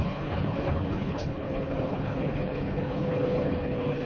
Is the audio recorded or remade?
remade